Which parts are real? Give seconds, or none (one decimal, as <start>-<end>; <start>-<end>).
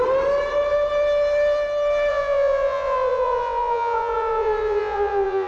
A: 0.0-2.1